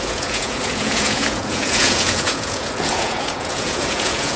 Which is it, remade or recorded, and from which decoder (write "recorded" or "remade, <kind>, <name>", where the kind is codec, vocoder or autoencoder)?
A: remade, vocoder, Vocos